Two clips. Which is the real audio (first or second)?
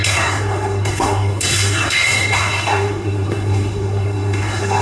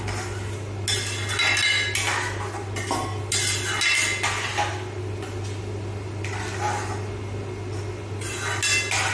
second